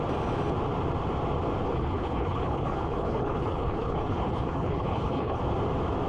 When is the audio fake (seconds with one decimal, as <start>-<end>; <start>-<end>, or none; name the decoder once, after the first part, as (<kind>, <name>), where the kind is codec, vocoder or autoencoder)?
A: 1.7-5.4 (codec, HILCodec)